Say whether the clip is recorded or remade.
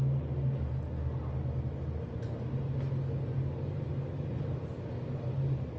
recorded